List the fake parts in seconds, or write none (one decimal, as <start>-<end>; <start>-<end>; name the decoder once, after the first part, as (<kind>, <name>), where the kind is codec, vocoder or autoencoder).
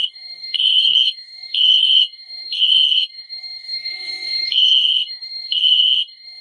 0.0-6.4 (codec, SNAC)